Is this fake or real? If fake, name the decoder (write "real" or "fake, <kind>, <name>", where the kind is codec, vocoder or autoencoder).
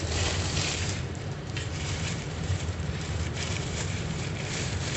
fake, vocoder, BigVGAN v2